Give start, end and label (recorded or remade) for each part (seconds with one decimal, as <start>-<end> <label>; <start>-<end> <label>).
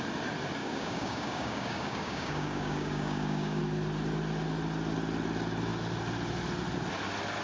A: 0.0-0.6 recorded; 0.6-3.6 remade; 3.6-7.4 recorded